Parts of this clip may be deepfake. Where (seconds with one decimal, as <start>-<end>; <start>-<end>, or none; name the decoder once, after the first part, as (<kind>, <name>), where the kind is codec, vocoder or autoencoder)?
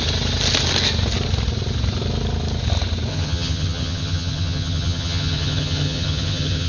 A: 3.1-6.7 (vocoder, HiFi-GAN)